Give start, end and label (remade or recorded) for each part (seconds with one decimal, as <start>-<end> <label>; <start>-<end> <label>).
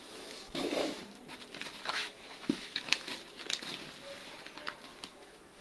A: 0.0-1.0 remade; 1.0-1.9 recorded; 1.9-3.1 remade; 3.1-5.1 recorded; 5.1-5.6 remade